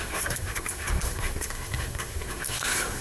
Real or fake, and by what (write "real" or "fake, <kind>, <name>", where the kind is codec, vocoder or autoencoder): fake, codec, SNAC